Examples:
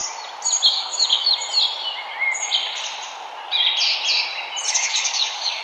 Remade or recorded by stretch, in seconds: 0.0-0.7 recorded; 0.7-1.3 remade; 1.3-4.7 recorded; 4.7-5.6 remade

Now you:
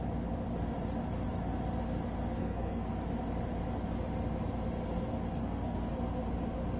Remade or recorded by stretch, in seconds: 0.0-2.4 recorded; 2.4-3.0 remade; 3.0-5.4 recorded; 5.4-5.9 remade; 5.9-6.8 recorded

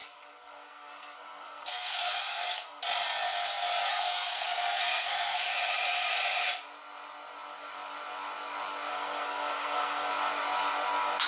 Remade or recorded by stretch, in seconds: 0.0-2.8 remade; 2.8-3.9 recorded; 3.9-5.5 remade; 5.5-8.9 recorded; 8.9-10.1 remade; 10.1-11.3 recorded

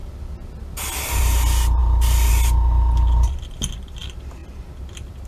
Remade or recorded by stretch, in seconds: 0.0-5.3 recorded

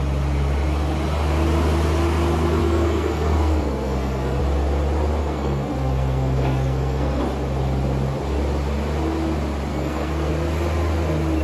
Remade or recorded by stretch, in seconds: 0.0-2.6 recorded; 2.6-4.4 remade; 4.4-5.2 recorded; 5.2-7.2 remade; 7.2-9.7 recorded; 9.7-10.3 remade; 10.3-11.4 recorded

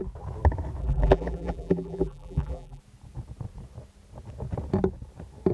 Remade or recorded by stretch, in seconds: 0.0-0.8 recorded; 0.8-2.8 remade; 2.8-5.5 recorded

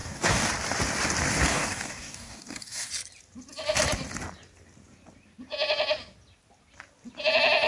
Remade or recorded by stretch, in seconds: 0.0-0.5 remade; 0.5-1.5 recorded; 1.5-2.9 remade; 2.9-7.7 recorded

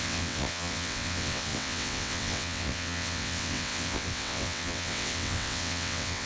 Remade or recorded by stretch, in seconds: 0.0-6.3 remade